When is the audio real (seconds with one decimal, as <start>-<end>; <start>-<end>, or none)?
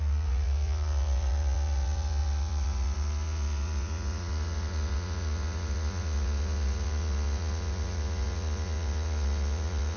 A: none